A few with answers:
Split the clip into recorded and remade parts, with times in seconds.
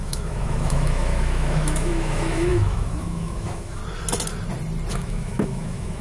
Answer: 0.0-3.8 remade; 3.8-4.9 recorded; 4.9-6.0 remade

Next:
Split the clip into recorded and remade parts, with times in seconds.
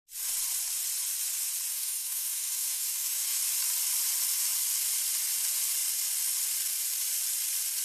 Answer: 0.0-1.7 recorded; 1.7-3.4 remade; 3.4-7.8 recorded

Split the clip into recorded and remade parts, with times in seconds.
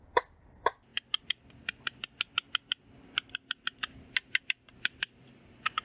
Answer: 0.0-0.9 remade; 0.9-4.4 recorded; 4.4-5.8 remade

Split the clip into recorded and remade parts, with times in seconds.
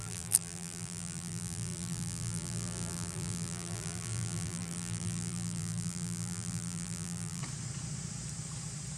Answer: 0.0-7.4 remade; 7.4-9.0 recorded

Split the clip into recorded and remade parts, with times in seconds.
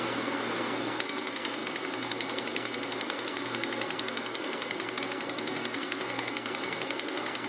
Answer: 0.0-7.5 remade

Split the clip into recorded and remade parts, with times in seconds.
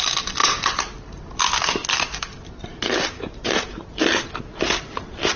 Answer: 0.0-1.8 recorded; 1.8-3.8 remade; 3.8-5.4 recorded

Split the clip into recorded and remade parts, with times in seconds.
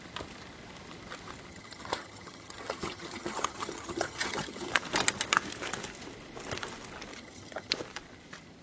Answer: 0.0-1.5 recorded; 1.5-4.7 remade; 4.7-7.1 recorded; 7.1-7.7 remade; 7.7-8.6 recorded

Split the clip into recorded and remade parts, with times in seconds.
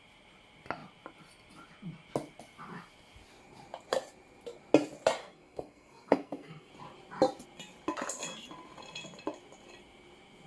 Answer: 0.0-5.2 recorded; 5.2-6.7 remade; 6.7-10.5 recorded